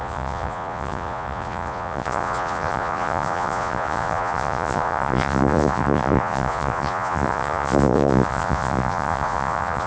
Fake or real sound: fake